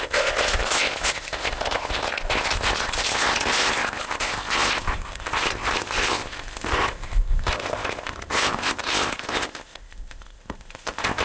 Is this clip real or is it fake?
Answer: fake